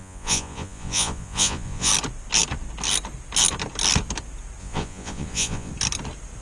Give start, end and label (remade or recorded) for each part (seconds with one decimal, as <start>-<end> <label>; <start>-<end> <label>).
0.0-1.9 remade; 1.9-4.6 recorded; 4.6-5.7 remade; 5.7-6.4 recorded